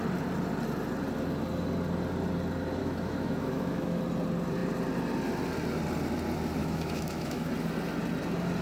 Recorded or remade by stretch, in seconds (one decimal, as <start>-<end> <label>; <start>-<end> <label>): 0.0-2.8 recorded; 2.8-4.0 remade; 4.0-6.6 recorded; 6.6-7.5 remade; 7.5-8.6 recorded